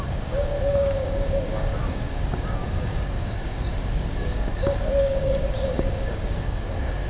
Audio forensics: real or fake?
fake